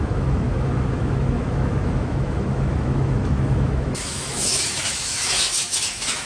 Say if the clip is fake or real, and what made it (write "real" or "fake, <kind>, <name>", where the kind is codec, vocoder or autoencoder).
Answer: fake, autoencoder, DAC-VAE